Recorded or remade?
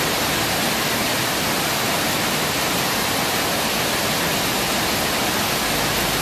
recorded